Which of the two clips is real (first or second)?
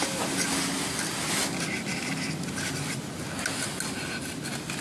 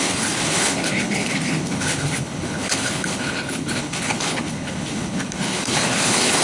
first